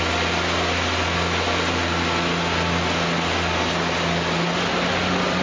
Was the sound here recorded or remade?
recorded